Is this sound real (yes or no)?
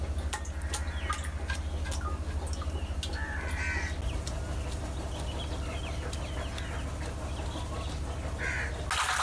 yes